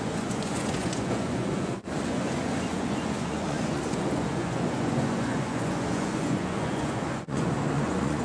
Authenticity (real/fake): fake